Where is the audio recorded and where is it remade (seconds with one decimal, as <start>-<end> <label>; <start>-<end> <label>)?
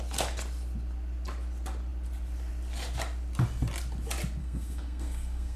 0.0-4.4 recorded; 4.4-5.6 remade